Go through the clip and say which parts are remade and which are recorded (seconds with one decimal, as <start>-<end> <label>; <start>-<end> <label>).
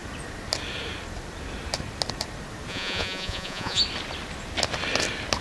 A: 0.0-2.7 recorded; 2.7-3.8 remade; 3.8-5.4 recorded